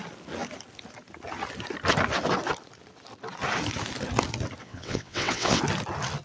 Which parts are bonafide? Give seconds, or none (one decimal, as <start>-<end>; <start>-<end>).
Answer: 0.0-4.6; 5.6-6.2